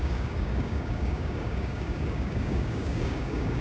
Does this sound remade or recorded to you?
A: remade